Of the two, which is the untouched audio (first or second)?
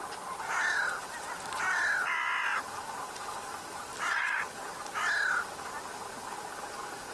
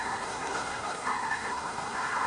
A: first